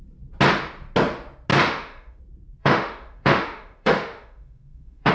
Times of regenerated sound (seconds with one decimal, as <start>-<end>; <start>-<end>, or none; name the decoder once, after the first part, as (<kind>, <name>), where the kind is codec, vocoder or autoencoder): 1.5-2.2 (autoencoder, DAC-VAE); 2.6-5.1